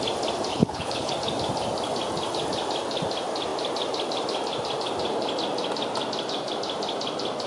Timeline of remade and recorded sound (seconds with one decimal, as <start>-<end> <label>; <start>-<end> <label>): 0.0-0.5 recorded; 0.5-1.1 remade; 1.1-7.5 recorded